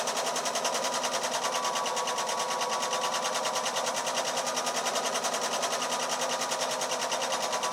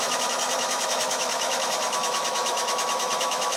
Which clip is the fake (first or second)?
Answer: second